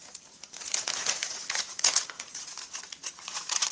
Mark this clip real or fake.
fake